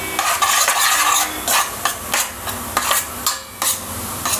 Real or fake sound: real